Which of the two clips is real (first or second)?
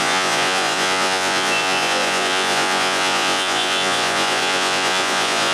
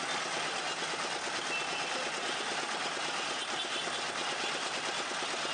second